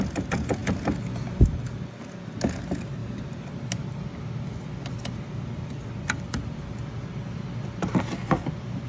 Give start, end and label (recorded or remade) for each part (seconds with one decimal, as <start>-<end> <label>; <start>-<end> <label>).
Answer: 0.0-8.9 recorded

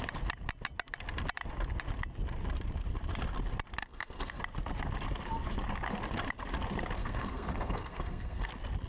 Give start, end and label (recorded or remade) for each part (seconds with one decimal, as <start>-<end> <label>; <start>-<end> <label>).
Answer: 0.0-3.8 recorded; 3.8-4.4 remade; 4.4-7.0 recorded; 7.0-8.5 remade; 8.5-8.9 recorded

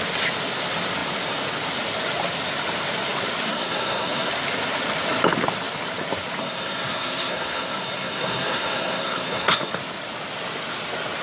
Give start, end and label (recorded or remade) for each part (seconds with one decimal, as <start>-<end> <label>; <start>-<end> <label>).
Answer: 0.0-3.5 recorded; 3.5-4.3 remade; 4.3-6.4 recorded; 6.4-9.7 remade; 9.7-11.2 recorded

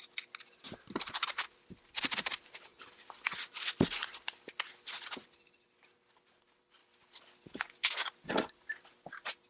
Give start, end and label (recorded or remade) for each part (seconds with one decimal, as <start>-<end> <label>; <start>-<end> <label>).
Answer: 0.0-9.5 recorded

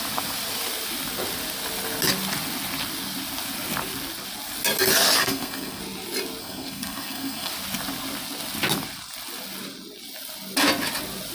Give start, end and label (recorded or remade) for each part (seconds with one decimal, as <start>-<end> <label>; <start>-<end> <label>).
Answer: 0.0-5.2 recorded; 5.2-5.8 remade; 5.8-6.4 recorded; 6.4-7.5 remade; 7.5-11.3 recorded

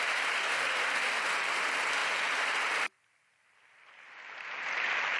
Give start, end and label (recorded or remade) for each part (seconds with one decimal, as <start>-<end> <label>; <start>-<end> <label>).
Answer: 0.0-5.2 recorded